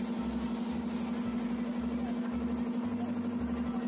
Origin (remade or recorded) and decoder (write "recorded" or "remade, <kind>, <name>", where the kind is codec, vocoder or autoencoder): recorded